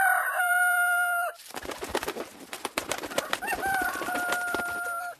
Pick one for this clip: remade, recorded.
remade